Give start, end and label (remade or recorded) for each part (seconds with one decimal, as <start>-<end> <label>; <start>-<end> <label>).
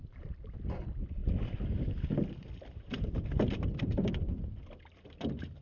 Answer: 0.0-1.2 remade; 1.2-3.5 recorded; 3.5-4.3 remade; 4.3-4.8 recorded; 4.8-5.6 remade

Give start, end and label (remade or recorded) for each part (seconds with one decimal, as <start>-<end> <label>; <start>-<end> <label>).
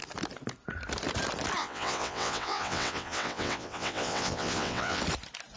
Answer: 0.0-1.6 recorded; 1.6-5.0 remade; 5.0-5.6 recorded